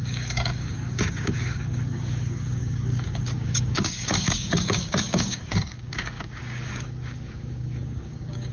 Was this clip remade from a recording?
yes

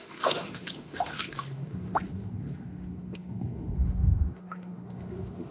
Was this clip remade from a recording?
yes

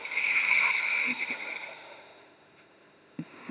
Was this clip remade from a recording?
yes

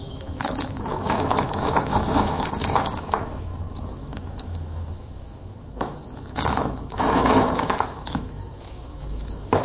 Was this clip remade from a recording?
yes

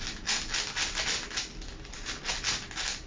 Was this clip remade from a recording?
no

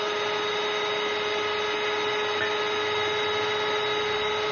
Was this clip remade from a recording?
no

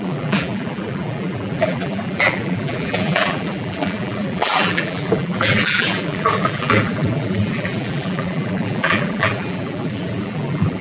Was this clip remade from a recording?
yes